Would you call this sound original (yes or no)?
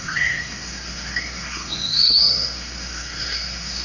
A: no